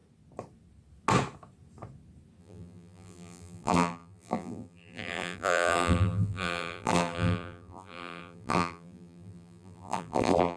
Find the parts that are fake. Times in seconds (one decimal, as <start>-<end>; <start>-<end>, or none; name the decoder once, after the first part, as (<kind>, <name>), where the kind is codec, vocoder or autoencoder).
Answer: 2.4-10.6 (vocoder, BigVGAN v2)